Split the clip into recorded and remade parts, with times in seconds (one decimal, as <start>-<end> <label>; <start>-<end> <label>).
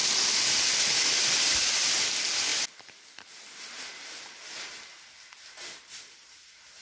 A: 0.0-6.8 recorded